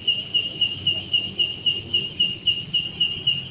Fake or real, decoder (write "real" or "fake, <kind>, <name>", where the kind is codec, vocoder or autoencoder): real